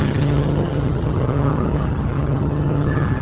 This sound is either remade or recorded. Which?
remade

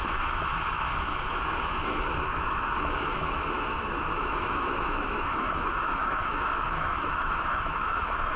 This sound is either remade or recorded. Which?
remade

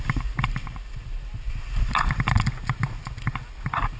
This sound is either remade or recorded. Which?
recorded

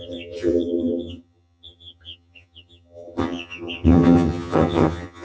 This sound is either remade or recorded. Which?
remade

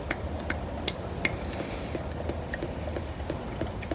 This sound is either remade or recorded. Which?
recorded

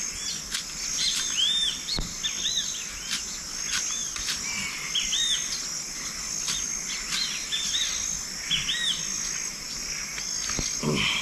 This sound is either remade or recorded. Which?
recorded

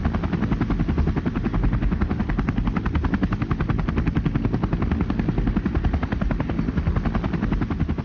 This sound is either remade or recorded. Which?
recorded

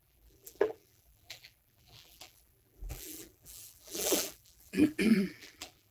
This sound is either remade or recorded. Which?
remade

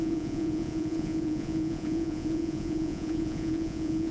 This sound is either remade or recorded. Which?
remade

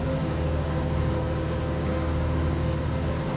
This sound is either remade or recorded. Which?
remade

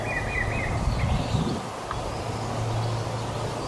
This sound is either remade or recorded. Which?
recorded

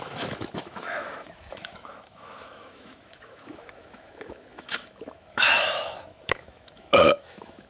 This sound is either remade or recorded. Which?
remade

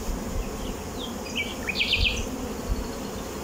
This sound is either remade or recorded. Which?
recorded